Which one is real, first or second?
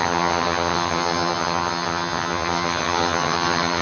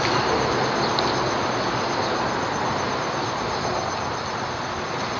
second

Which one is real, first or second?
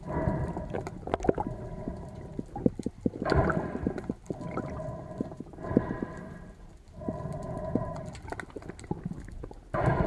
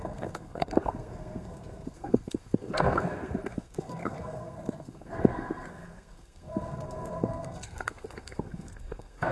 first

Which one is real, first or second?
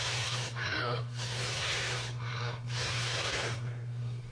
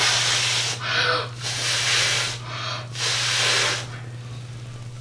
second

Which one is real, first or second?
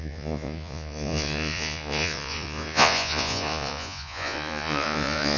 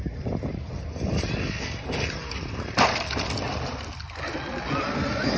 second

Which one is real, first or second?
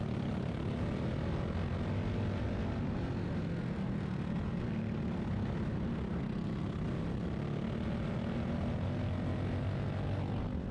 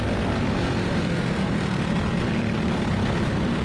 first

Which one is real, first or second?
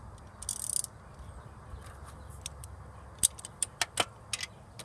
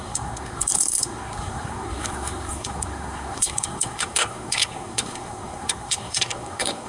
first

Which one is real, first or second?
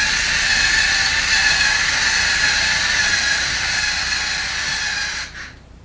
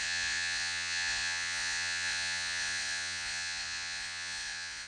first